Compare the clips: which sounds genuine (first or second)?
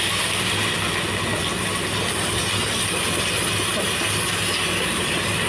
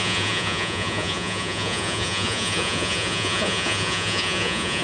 first